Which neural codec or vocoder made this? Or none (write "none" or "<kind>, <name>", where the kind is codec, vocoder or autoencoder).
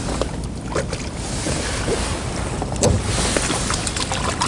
none